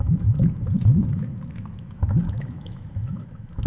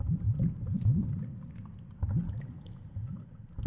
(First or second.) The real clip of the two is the second